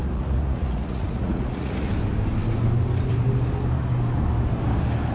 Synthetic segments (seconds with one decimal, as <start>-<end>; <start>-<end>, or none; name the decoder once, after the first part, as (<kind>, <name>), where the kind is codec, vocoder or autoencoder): 0.0-1.9 (vocoder, Vocos)